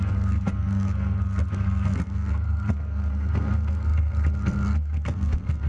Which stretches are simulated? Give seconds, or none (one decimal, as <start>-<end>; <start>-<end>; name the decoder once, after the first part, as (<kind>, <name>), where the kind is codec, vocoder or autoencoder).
0.0-5.7 (codec, SNAC)